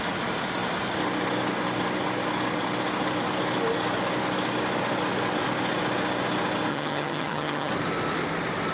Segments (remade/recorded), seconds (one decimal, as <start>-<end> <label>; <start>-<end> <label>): 0.0-6.7 recorded; 6.7-7.7 remade; 7.7-8.7 recorded